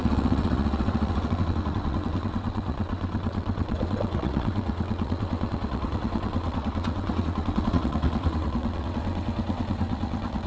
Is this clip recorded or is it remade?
remade